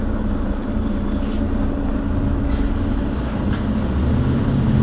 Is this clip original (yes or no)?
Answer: yes